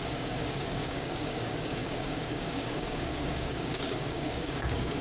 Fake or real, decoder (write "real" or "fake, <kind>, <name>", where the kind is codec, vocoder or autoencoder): fake, codec, DAC